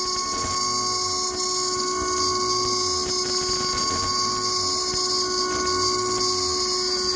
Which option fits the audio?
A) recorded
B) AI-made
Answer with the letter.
A